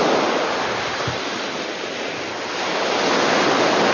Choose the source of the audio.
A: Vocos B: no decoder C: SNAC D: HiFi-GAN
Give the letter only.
B